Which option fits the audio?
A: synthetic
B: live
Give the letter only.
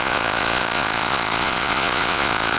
A